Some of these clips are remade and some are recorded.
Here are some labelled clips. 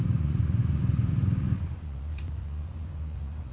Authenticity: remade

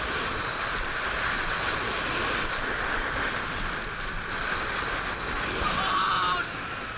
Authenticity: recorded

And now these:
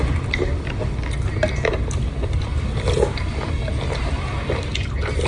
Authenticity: recorded